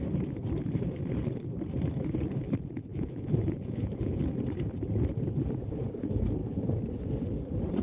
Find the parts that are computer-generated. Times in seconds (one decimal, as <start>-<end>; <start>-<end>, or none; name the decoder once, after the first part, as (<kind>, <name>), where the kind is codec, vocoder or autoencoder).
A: 2.9-4.2 (vocoder, Vocos)